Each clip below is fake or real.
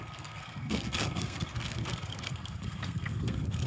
fake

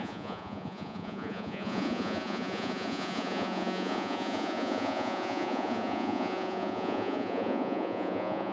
fake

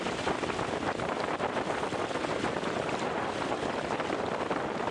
real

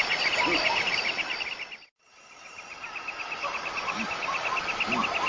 real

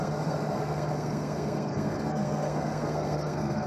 fake